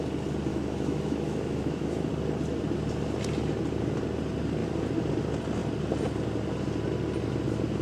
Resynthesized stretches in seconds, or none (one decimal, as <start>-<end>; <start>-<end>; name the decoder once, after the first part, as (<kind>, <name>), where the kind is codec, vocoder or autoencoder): 0.5-2.1 (autoencoder, DAC-VAE)